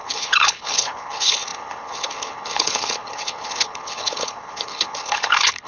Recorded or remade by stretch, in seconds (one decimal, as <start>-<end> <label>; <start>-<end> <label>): 0.0-5.7 remade